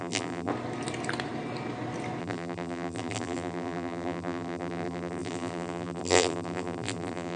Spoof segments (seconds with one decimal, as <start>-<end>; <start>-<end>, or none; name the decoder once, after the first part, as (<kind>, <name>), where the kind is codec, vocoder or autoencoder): 0.0-0.5 (vocoder, BigVGAN v2); 2.2-7.4